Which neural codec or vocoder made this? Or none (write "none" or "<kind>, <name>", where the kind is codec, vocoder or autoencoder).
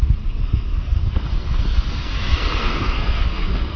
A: codec, SNAC